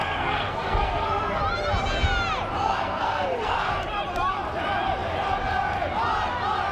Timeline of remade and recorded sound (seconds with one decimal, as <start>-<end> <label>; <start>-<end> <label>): 0.0-1.4 remade; 1.4-2.6 recorded; 2.6-3.7 remade; 3.7-6.7 recorded